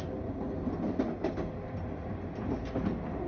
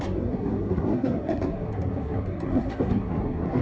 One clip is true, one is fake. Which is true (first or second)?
first